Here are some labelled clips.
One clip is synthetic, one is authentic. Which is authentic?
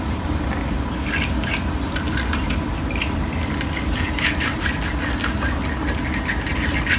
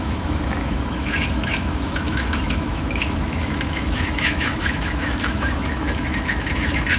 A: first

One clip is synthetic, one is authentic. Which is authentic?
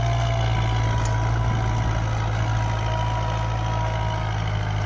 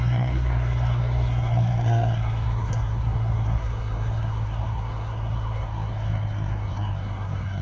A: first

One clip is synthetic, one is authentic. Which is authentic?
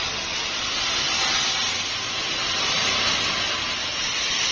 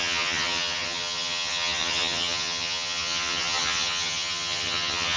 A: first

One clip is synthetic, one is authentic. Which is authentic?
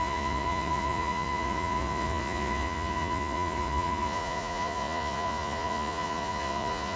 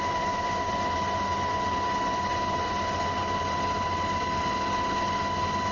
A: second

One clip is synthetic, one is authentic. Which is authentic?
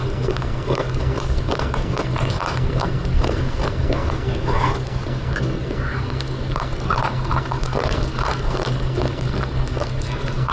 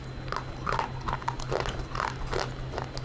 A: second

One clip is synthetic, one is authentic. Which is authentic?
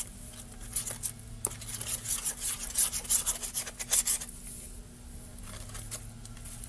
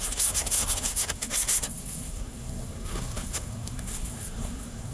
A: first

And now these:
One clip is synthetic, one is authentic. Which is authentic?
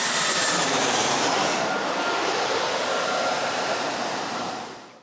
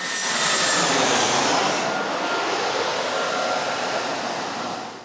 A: second